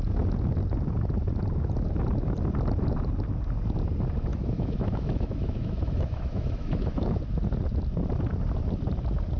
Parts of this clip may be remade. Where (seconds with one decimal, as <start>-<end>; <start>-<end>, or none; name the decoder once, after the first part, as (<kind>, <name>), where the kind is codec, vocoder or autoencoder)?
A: 4.3-7.2 (autoencoder, DAC-VAE)